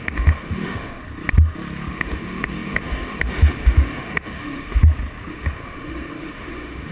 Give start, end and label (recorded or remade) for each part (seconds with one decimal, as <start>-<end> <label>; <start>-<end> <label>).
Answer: 0.0-1.0 remade; 1.0-1.9 recorded; 1.9-4.8 remade; 4.8-5.3 recorded; 5.3-6.9 remade